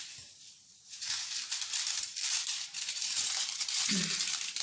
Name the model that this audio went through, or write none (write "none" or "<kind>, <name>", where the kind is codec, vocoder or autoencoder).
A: vocoder, BigVGAN v2